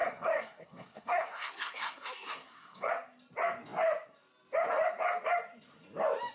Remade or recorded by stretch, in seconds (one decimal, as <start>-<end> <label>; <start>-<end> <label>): 0.0-2.9 remade; 2.9-6.3 recorded